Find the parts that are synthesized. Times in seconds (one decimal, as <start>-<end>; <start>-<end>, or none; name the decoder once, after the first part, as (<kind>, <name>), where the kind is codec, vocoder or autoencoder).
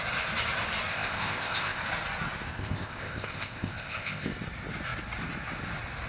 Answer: 0.9-1.8 (codec, ZipCodec); 2.5-4.3